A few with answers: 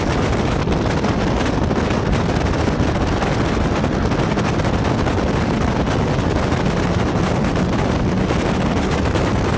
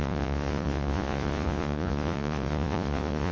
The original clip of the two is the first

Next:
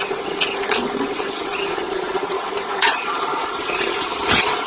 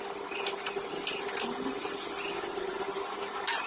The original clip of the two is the second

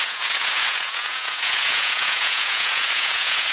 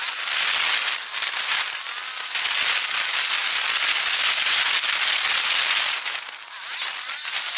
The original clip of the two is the second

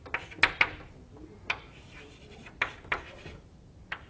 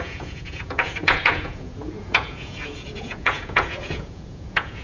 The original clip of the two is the first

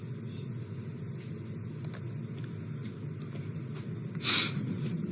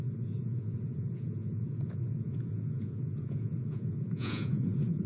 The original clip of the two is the first